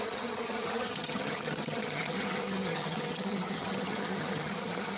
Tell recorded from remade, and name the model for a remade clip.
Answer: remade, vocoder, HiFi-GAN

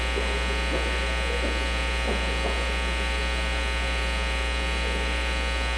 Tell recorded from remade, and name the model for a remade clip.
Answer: recorded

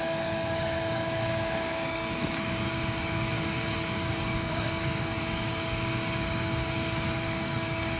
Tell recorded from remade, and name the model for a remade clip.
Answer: remade, codec, DAC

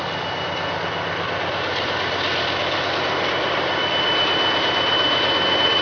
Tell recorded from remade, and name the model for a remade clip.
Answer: recorded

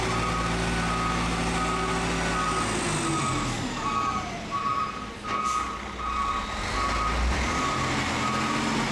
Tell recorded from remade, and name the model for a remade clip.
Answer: recorded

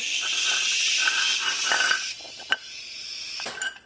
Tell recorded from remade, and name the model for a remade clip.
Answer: recorded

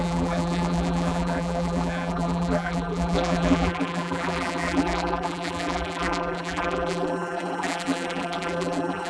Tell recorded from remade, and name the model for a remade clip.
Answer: remade, vocoder, BigVGAN v2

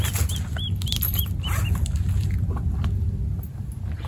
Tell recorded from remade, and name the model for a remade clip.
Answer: recorded